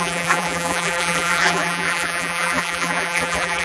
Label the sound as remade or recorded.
remade